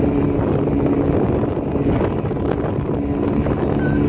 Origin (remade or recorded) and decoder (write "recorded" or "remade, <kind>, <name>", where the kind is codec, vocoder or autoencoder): recorded